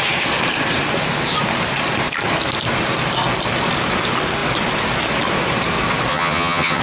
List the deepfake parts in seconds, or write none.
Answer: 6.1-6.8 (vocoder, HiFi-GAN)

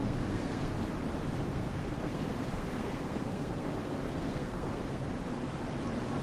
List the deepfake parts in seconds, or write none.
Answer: 0.0-0.7 (codec, SNAC); 1.5-5.1

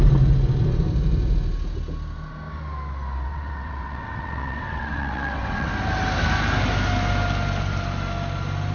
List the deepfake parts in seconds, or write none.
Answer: 3.3-5.7 (vocoder, WaveNeXt)

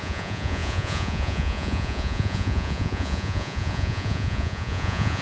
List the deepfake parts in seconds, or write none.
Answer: 0.0-5.2 (vocoder, Vocos)

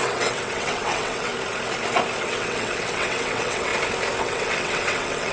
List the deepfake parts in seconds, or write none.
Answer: 0.0-1.3 (vocoder, WaveNeXt); 2.2-3.7; 4.2-5.3

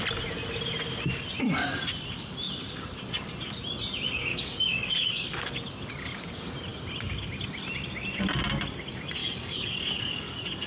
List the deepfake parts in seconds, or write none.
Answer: 4.3-5.5 (codec, DAC); 9.2-10.7

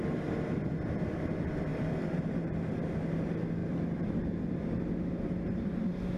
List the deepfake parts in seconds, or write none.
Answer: 1.7-2.7 (vocoder, BigVGAN v2); 3.6-4.8

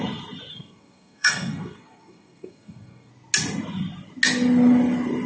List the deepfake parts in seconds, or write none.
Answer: 0.5-3.1 (codec, SNAC)